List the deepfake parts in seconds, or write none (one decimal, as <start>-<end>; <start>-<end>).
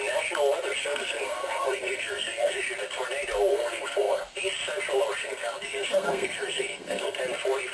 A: 0.8-2.6; 3.5-4.2; 5.2-7.2